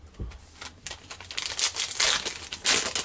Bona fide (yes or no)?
yes